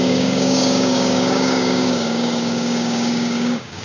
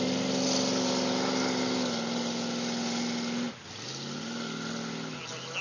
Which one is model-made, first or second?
first